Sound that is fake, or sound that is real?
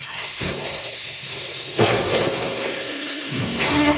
fake